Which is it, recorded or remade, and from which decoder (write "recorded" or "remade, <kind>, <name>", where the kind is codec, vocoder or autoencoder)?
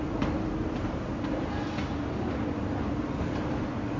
recorded